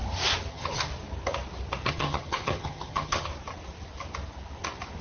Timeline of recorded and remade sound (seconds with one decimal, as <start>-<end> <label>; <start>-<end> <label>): 0.0-0.5 recorded; 0.5-0.9 remade; 0.9-1.9 recorded; 1.9-3.3 remade; 3.3-5.0 recorded